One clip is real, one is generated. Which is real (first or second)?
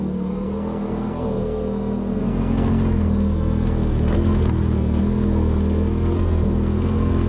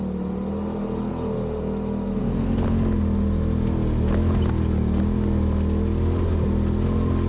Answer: second